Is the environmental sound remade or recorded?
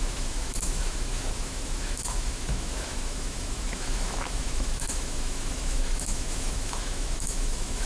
remade